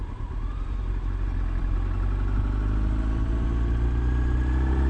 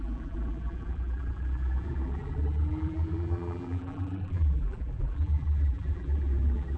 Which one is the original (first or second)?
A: first